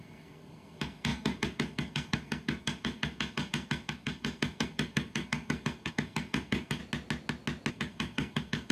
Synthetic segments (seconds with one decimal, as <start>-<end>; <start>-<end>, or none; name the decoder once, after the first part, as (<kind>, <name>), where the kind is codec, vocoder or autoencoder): 0.0-6.8 (codec, SNAC); 7.7-8.7